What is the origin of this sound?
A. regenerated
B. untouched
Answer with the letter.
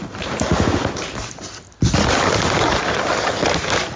B